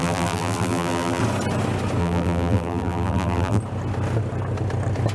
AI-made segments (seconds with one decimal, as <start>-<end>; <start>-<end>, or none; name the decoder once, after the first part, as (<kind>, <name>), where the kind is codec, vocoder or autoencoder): 0.0-1.2 (vocoder, BigVGAN v2); 2.0-3.6